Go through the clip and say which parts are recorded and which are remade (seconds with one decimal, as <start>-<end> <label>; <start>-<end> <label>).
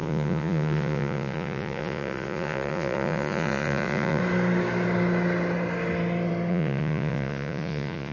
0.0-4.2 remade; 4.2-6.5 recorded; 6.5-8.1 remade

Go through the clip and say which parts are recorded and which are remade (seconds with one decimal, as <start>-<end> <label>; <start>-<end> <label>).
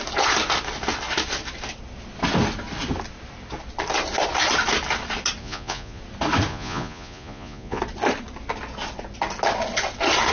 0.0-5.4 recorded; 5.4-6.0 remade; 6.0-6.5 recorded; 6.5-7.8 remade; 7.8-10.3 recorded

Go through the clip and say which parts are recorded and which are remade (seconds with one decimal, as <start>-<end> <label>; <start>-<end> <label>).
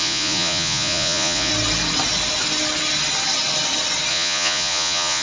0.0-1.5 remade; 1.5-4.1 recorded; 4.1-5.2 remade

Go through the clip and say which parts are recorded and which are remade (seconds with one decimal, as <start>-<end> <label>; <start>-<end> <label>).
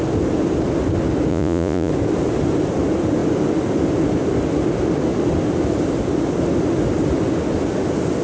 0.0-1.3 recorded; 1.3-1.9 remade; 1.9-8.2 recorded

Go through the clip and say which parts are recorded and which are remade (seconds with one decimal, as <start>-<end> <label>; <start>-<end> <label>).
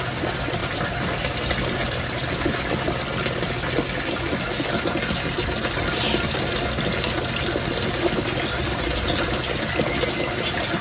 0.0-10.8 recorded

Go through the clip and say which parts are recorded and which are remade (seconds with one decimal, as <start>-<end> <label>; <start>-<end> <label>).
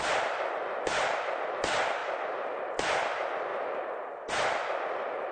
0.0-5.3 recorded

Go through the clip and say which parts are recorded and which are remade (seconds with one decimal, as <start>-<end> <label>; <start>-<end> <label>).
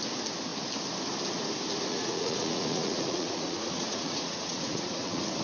0.0-1.9 recorded; 1.9-5.4 remade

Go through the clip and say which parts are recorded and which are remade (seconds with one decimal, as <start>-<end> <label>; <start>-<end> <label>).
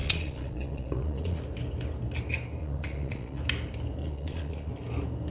0.0-1.4 remade; 1.4-2.6 recorded; 2.6-3.4 remade; 3.4-4.0 recorded; 4.0-4.7 remade; 4.7-5.3 recorded